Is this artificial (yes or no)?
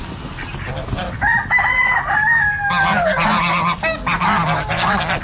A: no